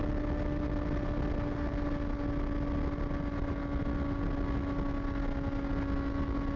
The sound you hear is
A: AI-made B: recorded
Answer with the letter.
B